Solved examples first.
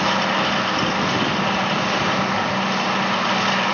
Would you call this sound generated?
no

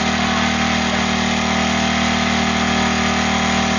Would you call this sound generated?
no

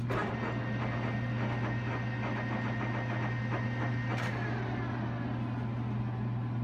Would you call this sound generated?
no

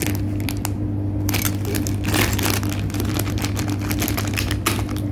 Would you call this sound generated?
no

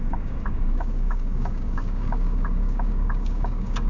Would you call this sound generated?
yes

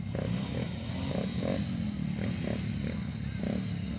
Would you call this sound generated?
no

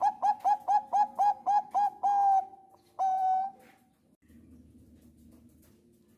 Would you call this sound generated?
no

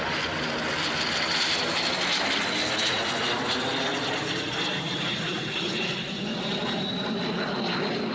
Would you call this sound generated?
no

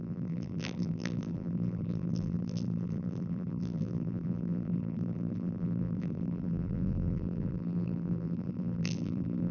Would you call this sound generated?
yes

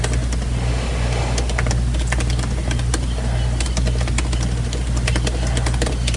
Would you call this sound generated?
no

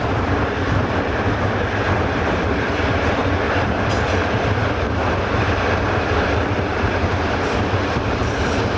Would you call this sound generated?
yes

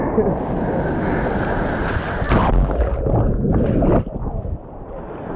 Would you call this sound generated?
no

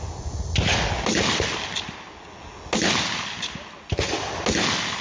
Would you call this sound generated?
no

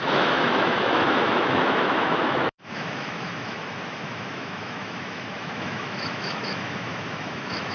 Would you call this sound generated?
yes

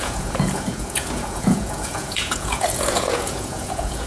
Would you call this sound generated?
yes